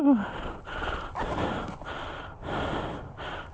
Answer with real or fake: real